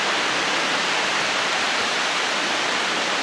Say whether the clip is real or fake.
real